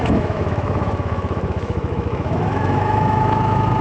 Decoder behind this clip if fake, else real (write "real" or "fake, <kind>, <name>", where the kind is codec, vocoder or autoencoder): fake, autoencoder, DAC-VAE